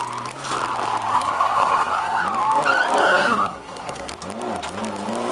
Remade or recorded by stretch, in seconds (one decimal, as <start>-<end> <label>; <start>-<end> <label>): 0.0-1.1 recorded; 1.1-2.2 remade; 2.2-3.0 recorded; 3.0-4.1 remade; 4.1-5.3 recorded